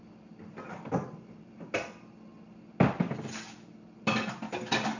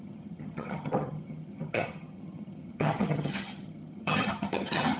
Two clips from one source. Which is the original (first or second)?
first